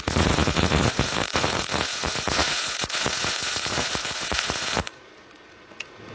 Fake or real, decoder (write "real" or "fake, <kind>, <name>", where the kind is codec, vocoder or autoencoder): fake, vocoder, Vocos